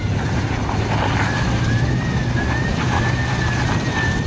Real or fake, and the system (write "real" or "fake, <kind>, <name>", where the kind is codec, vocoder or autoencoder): real